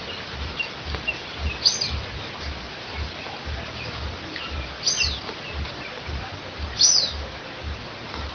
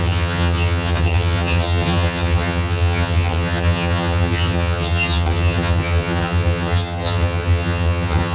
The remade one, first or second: second